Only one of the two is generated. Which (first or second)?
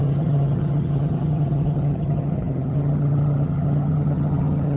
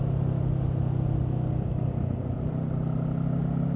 first